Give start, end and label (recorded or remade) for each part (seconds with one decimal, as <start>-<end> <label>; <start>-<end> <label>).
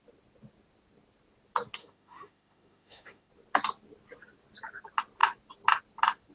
0.0-1.8 recorded; 1.8-3.3 remade; 3.3-6.3 recorded